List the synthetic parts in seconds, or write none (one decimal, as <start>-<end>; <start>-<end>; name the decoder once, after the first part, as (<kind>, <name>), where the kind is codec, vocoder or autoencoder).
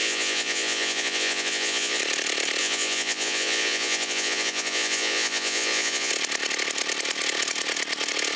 0.0-2.0 (vocoder, Vocos); 2.6-6.1